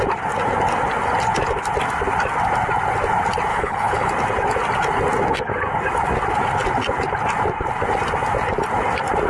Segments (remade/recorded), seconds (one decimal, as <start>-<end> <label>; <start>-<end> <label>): 0.0-3.5 recorded; 3.5-4.1 remade; 4.1-9.3 recorded

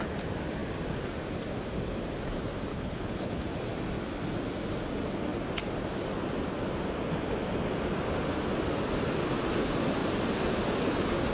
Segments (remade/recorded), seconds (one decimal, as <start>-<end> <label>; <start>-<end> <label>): 0.0-2.7 recorded; 2.7-3.4 remade; 3.4-11.3 recorded

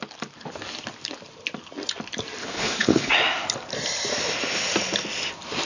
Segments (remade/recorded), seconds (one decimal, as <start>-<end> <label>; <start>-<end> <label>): 0.0-2.4 recorded; 2.4-3.1 remade; 3.1-5.6 recorded

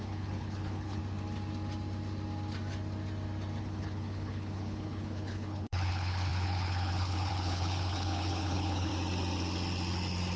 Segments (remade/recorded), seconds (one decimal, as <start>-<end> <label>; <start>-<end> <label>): 0.0-1.0 remade; 1.0-3.6 recorded; 3.6-8.9 remade; 8.9-10.4 recorded